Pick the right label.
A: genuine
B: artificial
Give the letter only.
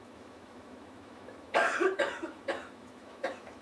B